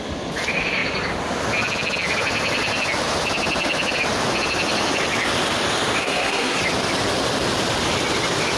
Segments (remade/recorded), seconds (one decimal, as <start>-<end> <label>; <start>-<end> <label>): 0.0-6.0 recorded; 6.0-6.6 remade; 6.6-8.6 recorded